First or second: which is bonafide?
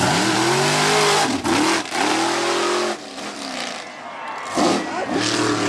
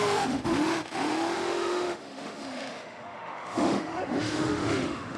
first